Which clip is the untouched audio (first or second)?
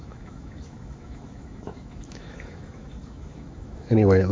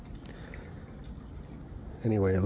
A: second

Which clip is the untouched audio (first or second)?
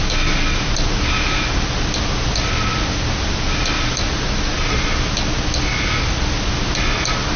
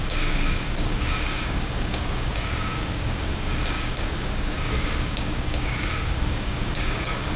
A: first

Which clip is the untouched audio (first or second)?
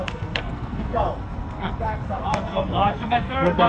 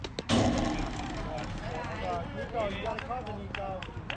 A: second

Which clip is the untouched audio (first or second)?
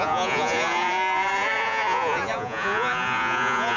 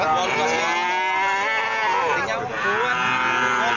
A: second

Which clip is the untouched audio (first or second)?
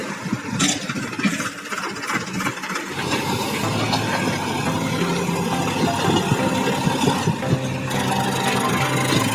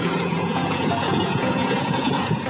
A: first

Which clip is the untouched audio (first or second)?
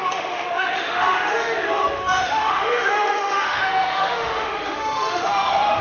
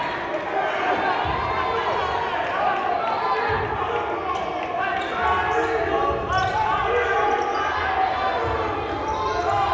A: second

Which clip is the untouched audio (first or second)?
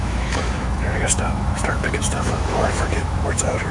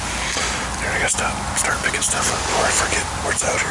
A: second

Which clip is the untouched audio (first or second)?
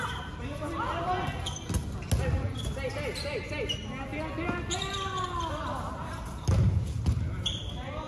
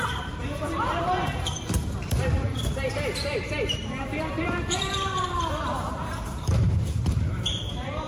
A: first